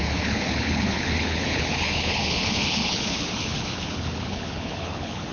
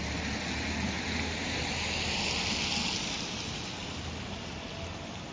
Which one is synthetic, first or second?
first